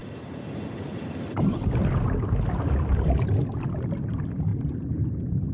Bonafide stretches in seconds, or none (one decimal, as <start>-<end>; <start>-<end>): 0.0-4.5